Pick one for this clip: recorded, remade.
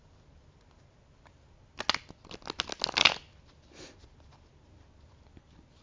recorded